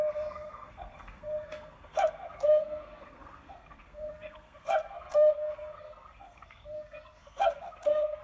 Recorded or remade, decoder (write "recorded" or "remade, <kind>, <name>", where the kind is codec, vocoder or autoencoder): remade, codec, SNAC